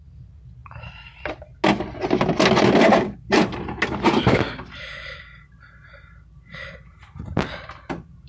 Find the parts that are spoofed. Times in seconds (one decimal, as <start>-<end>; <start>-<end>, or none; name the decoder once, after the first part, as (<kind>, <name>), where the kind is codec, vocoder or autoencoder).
none